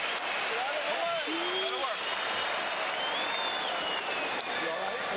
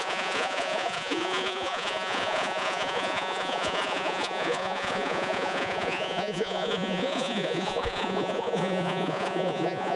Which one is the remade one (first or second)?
second